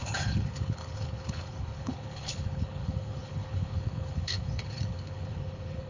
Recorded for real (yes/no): no